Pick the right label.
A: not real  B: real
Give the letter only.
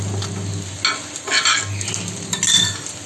B